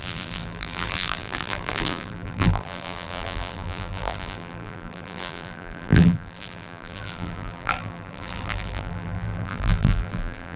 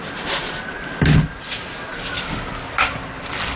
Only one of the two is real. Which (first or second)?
second